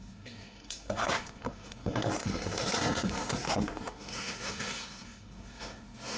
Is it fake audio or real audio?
fake